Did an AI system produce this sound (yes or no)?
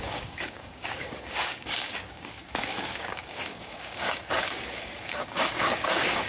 yes